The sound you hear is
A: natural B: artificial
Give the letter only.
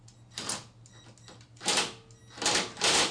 A